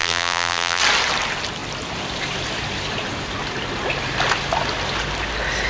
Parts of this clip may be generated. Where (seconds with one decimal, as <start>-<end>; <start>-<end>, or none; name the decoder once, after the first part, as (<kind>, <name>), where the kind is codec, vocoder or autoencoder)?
0.0-0.8 (vocoder, BigVGAN v2)